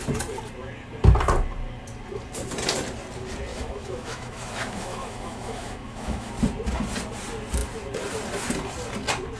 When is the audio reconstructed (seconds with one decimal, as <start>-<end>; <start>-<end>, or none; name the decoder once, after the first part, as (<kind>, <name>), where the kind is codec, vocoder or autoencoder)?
3.5-6.3 (autoencoder, DAC-VAE)